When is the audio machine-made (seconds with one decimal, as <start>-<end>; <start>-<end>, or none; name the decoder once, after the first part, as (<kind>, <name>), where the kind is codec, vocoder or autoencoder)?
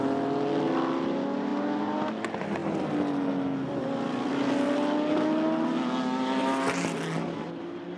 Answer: none